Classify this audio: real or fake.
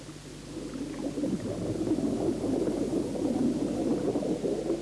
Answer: real